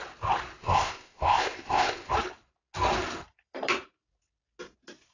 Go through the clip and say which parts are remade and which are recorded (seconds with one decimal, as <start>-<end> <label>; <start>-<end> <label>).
0.0-0.6 recorded; 0.6-2.1 remade; 2.1-5.1 recorded